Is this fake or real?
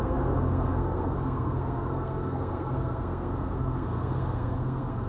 fake